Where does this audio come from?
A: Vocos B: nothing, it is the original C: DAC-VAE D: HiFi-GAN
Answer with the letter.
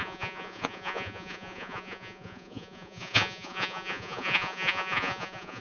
A